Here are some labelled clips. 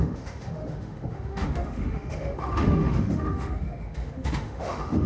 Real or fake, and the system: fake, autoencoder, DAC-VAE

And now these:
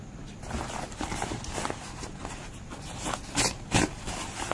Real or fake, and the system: real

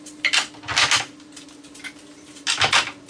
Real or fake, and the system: real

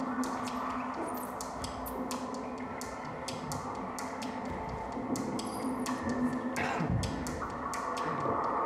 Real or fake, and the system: real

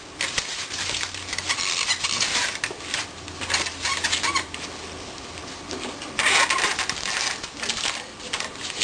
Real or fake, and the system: fake, vocoder, BigVGAN v2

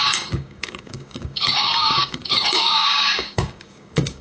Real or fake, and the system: fake, codec, DAC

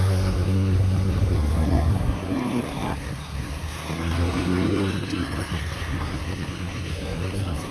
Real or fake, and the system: fake, codec, SNAC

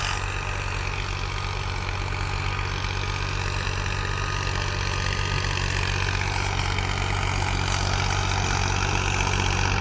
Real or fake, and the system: real